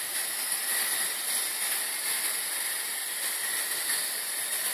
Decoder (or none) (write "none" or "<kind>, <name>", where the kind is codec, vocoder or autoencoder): none